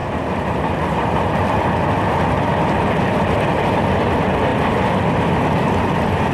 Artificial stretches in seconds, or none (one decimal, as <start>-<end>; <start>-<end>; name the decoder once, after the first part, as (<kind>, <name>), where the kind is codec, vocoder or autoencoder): 4.5-5.8 (vocoder, BigVGAN v2)